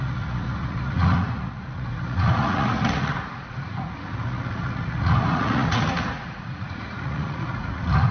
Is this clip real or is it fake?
fake